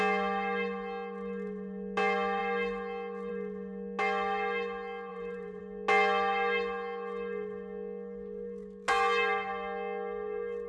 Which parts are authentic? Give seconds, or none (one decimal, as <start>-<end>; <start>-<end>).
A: 0.0-5.1; 5.6-10.7